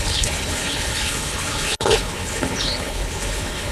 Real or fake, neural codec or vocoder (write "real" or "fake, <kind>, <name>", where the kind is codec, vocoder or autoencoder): fake, codec, HILCodec